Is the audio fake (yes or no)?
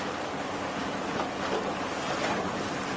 no